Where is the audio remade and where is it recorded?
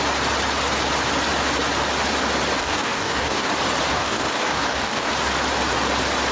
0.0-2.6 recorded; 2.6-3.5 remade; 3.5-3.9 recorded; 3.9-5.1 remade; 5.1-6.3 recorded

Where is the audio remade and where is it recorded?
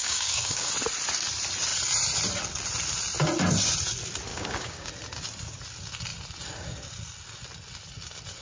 0.0-0.7 remade; 0.7-4.3 recorded; 4.3-4.9 remade; 4.9-8.4 recorded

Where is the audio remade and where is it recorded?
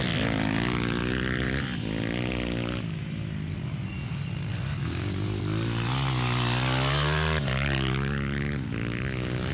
0.0-4.8 recorded; 4.8-5.4 remade; 5.4-9.5 recorded